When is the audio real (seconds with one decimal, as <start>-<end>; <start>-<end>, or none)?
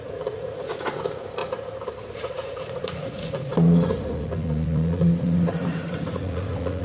1.4-2.0